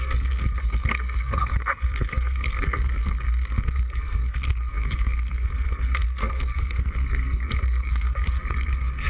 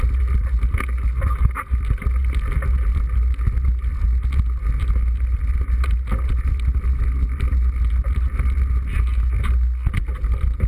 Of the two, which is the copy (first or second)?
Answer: first